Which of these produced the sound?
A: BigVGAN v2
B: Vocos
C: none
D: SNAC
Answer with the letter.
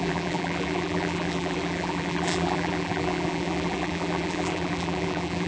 A